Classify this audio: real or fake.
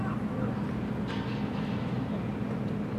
real